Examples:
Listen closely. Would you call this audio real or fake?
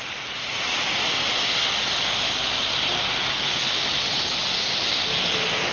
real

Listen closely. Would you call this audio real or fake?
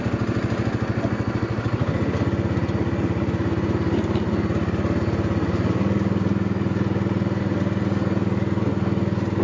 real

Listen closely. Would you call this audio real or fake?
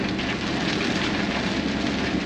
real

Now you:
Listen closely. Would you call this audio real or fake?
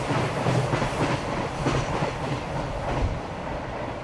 real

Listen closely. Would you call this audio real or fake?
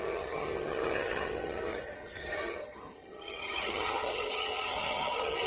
fake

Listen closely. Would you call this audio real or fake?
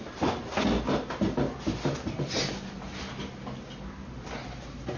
real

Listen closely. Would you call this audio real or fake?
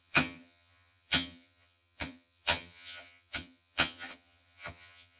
fake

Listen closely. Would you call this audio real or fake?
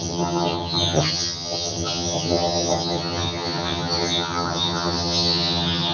fake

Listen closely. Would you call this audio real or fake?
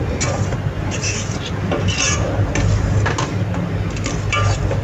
real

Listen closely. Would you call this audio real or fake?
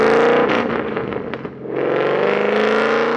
real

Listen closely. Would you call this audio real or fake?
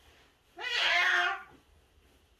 real